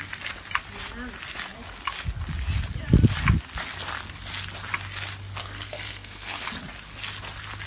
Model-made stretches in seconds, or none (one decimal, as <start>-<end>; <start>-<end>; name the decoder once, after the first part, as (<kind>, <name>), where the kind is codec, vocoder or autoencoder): 5.4-6.4 (codec, SNAC)